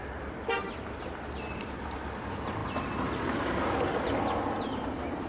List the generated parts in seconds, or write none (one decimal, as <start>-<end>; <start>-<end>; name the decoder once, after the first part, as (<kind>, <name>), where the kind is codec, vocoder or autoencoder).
none